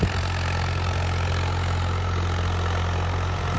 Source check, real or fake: real